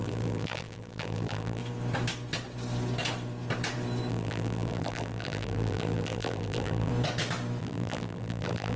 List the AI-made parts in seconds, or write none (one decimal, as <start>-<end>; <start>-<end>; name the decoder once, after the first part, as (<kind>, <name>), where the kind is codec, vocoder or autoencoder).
0.0-1.6 (vocoder, BigVGAN v2); 4.1-6.9; 7.6-8.8